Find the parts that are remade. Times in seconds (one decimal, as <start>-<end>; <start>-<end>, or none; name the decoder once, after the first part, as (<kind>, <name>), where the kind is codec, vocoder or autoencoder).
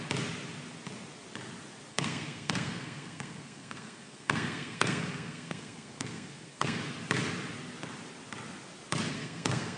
1.9-6.8 (codec, SNAC); 9.1-9.8